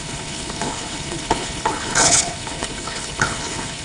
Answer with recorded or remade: remade